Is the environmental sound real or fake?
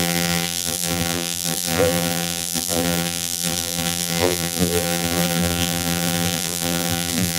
fake